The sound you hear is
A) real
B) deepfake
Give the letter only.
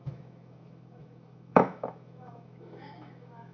B